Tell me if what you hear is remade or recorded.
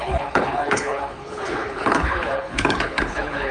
remade